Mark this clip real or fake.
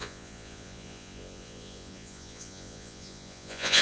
fake